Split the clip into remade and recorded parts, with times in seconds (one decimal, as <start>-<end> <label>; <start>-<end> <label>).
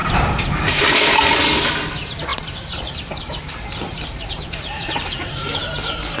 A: 0.0-0.8 remade; 0.8-2.3 recorded; 2.3-5.3 remade; 5.3-6.2 recorded